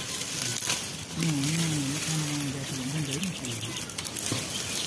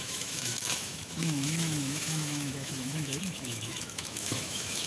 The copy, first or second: second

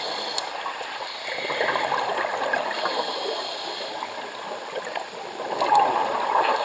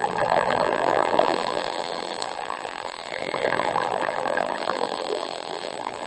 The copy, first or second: second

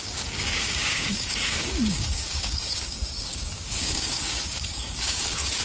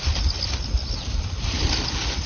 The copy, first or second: first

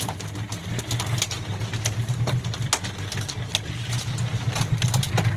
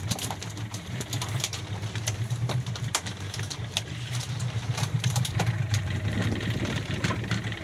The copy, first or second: second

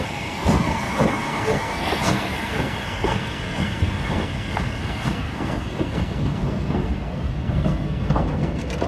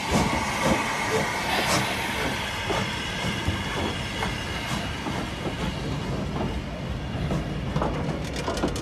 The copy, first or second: first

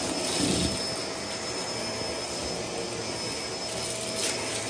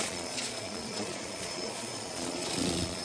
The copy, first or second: second